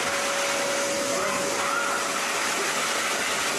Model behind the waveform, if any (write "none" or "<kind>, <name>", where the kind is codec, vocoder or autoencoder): none